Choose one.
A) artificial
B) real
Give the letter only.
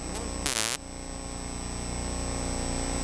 B